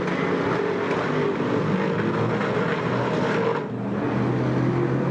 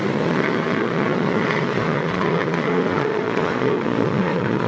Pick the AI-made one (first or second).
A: second